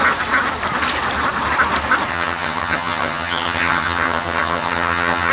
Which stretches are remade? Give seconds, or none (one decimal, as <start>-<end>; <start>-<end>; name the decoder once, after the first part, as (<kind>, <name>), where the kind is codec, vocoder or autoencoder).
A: 2.1-5.3 (vocoder, HiFi-GAN)